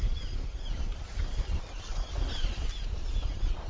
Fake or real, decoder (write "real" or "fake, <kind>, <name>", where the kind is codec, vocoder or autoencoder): real